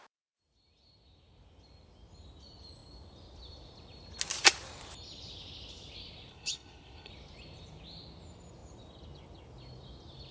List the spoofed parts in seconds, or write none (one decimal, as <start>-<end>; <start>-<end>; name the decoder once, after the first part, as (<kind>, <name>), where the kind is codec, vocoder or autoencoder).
6.3-7.1 (codec, HILCodec)